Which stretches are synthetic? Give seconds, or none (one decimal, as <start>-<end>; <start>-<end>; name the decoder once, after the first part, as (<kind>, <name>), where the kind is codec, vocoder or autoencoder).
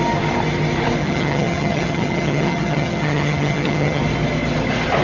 1.0-4.0 (vocoder, HiFi-GAN)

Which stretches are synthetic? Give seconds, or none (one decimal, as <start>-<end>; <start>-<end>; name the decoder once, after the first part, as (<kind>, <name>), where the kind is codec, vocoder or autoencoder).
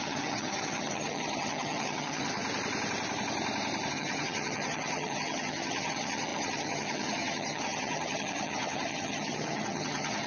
0.0-2.4 (vocoder, HiFi-GAN); 3.9-10.3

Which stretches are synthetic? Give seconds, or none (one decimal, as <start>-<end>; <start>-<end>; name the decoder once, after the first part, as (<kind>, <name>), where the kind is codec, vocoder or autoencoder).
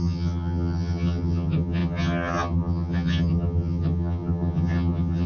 0.0-5.3 (vocoder, HiFi-GAN)